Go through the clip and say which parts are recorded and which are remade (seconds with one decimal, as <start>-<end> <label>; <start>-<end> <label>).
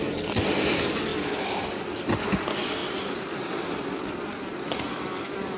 0.0-5.6 recorded